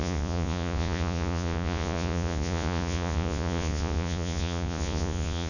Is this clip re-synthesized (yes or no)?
yes